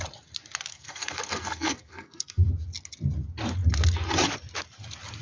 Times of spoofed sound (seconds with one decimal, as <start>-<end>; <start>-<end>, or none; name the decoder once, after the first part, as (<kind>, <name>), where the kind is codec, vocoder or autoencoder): 0.7-2.5 (codec, SNAC)